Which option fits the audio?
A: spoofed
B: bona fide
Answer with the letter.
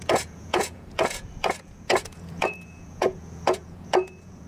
A